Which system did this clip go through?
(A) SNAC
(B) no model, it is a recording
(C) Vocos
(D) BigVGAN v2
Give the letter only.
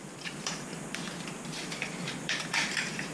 D